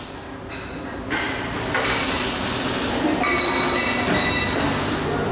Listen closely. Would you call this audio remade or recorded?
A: remade